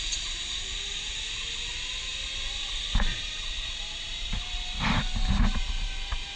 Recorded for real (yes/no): yes